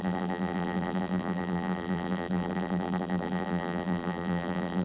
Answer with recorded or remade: remade